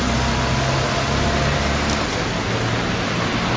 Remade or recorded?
recorded